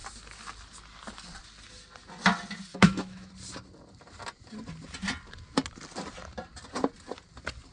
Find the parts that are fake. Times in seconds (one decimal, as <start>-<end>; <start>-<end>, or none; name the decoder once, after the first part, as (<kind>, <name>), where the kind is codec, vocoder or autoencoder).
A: 2.7-3.3 (autoencoder, DAC-VAE)